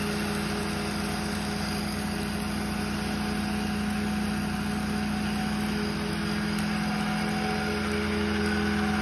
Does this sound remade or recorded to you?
recorded